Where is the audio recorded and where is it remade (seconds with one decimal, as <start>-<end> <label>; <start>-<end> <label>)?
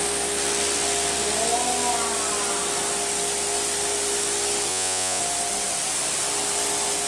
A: 0.0-4.7 recorded; 4.7-5.2 remade; 5.2-7.1 recorded